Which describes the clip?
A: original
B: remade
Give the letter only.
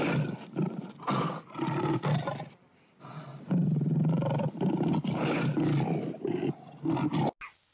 A